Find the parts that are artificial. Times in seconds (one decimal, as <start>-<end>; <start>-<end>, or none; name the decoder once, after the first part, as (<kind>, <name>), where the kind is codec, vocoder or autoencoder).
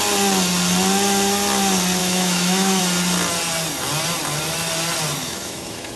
2.0-2.8 (autoencoder, DAC-VAE); 5.2-6.0